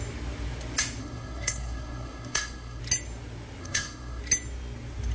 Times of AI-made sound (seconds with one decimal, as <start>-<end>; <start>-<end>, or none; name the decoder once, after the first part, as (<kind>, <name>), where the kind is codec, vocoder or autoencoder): 1.0-2.8 (codec, SNAC); 3.6-4.2